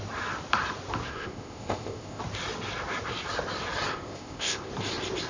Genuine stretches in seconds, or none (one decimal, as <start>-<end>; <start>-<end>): 0.0-1.1; 2.2-3.9; 4.7-5.3